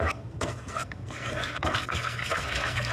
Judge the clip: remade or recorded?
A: remade